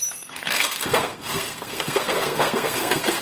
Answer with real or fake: fake